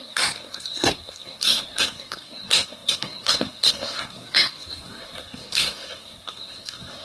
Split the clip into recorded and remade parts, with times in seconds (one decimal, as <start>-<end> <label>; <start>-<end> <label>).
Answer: 0.0-7.0 remade